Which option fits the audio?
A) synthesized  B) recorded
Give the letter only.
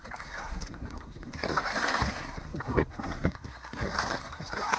A